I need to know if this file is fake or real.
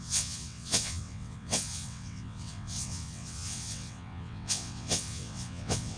fake